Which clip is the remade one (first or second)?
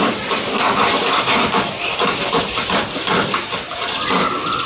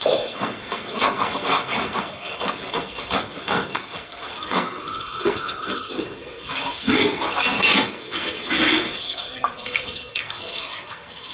second